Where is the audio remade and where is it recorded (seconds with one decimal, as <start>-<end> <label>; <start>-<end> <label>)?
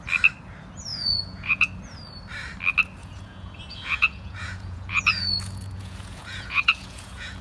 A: 0.0-0.9 recorded; 0.9-1.7 remade; 1.7-3.0 recorded; 3.0-7.4 remade